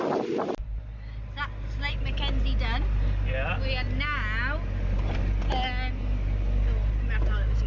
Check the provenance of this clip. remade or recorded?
recorded